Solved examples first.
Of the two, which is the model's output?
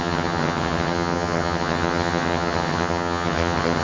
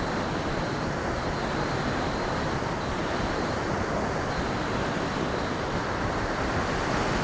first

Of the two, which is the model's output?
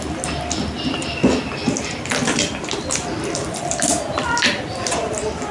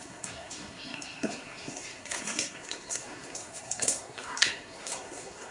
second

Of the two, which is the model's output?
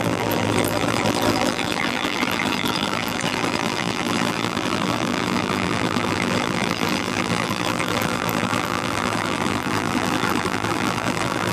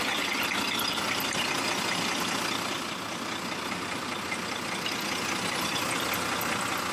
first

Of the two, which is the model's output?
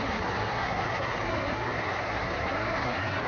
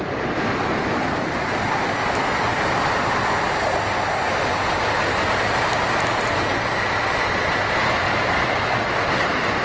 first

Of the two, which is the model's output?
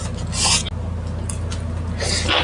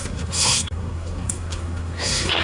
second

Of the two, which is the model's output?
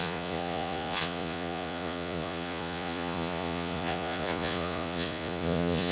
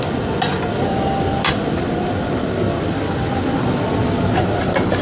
first